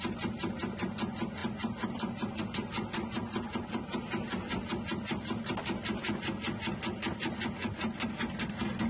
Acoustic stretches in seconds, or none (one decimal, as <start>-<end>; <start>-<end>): 0.0-8.9